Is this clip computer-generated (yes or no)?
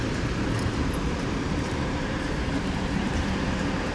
yes